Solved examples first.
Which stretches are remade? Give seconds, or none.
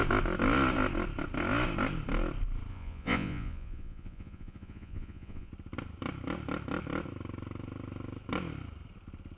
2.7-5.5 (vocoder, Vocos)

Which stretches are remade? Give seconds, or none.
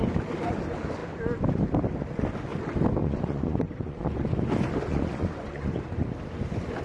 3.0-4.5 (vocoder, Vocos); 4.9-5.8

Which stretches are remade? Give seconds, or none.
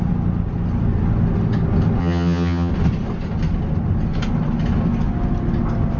2.0-2.7 (vocoder, HiFi-GAN)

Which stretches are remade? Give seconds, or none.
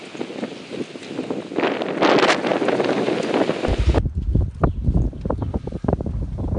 none